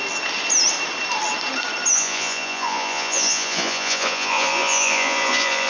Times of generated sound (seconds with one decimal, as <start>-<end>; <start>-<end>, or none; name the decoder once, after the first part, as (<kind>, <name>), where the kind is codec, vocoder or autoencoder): 1.9-5.7 (vocoder, Vocos)